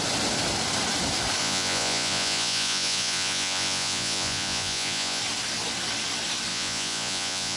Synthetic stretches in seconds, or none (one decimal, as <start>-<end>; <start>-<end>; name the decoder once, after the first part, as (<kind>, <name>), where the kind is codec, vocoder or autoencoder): 1.4-5.2 (vocoder, Vocos); 6.5-7.6